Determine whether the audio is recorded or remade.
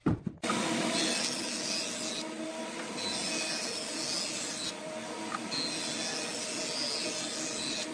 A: recorded